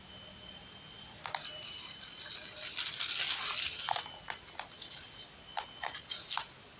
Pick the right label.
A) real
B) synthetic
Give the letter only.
A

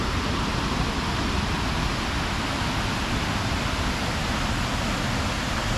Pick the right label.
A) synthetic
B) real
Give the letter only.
B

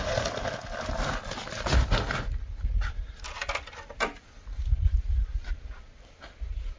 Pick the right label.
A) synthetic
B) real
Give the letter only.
B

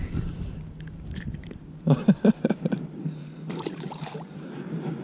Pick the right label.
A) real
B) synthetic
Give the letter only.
B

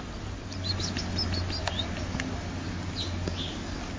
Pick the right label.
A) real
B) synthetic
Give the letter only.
A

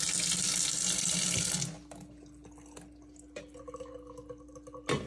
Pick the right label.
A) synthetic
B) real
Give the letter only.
B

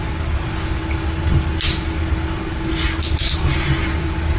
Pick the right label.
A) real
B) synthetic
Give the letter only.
A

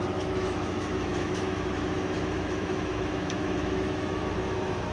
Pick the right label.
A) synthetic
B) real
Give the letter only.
A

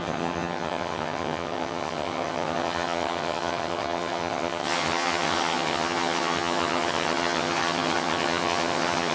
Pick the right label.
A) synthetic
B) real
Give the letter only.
A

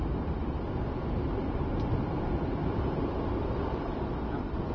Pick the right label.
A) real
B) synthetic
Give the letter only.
A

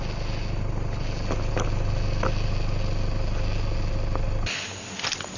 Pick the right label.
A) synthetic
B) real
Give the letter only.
B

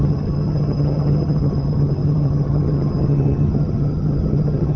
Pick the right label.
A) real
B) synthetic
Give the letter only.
B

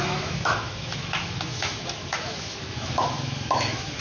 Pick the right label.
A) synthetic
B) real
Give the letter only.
A